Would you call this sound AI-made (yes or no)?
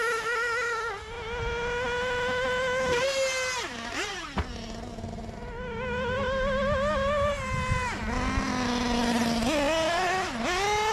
no